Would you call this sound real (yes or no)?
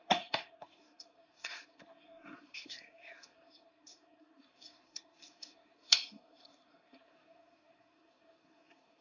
no